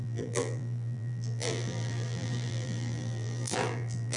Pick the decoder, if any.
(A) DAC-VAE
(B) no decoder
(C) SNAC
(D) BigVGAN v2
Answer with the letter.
D